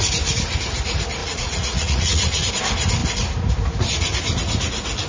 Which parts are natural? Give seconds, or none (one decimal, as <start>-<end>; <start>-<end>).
0.0-1.2; 2.5-5.1